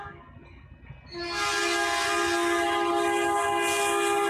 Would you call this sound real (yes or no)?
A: yes